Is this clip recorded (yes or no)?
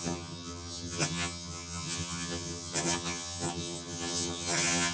no